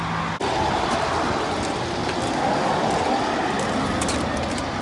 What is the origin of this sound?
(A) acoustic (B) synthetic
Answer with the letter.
A